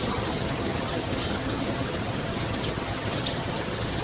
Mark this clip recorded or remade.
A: remade